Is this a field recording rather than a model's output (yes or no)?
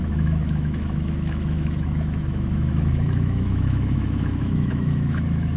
no